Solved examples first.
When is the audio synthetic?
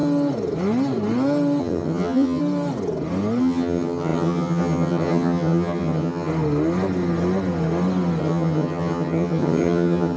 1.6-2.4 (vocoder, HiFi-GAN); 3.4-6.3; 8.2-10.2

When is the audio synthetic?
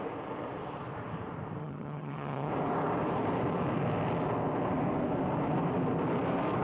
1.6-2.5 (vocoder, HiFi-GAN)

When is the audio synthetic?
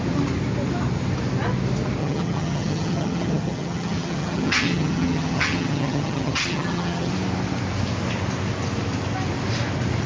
2.0-7.1 (vocoder, HiFi-GAN)